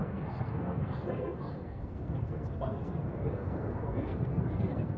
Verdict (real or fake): fake